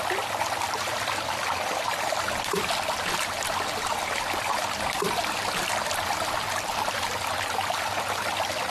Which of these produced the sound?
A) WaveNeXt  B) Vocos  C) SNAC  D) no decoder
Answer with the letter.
D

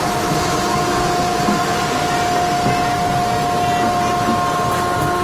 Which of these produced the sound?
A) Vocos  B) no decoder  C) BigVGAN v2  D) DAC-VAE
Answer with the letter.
B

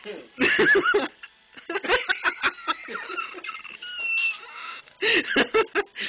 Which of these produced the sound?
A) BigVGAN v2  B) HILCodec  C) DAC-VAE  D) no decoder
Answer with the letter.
D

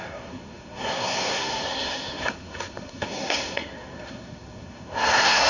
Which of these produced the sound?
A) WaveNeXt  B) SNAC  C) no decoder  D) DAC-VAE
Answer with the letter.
B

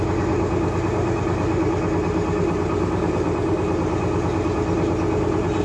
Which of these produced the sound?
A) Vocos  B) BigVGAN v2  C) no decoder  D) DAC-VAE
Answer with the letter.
C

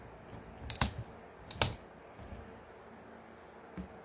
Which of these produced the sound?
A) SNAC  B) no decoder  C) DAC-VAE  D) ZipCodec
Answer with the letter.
B